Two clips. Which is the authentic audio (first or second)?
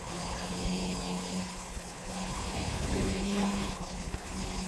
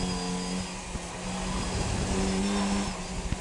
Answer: second